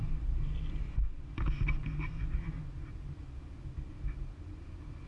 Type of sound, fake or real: real